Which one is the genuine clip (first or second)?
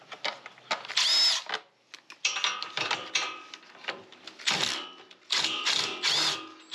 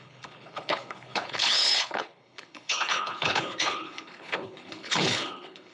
first